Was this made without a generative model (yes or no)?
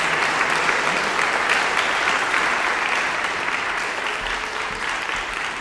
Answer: yes